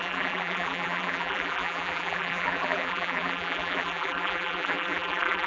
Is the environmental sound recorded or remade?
remade